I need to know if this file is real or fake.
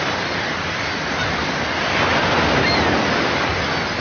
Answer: real